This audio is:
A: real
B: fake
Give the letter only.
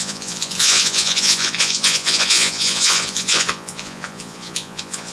B